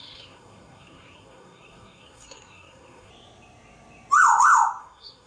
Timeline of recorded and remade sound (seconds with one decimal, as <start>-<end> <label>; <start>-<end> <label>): 0.0-3.1 remade; 3.1-4.8 recorded; 4.8-5.3 remade